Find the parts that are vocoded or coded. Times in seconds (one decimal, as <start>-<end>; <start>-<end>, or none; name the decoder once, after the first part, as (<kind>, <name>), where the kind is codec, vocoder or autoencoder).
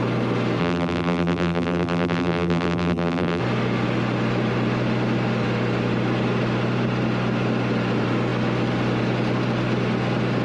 0.6-3.4 (vocoder, BigVGAN v2)